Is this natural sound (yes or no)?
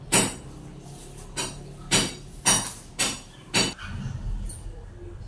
yes